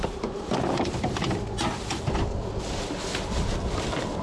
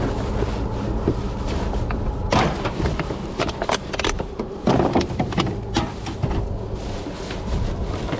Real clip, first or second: second